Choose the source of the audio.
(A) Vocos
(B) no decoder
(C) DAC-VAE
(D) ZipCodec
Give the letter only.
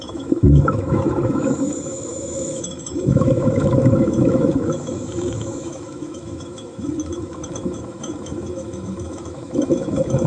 C